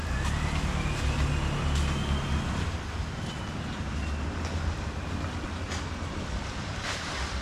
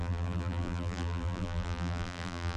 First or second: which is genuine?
first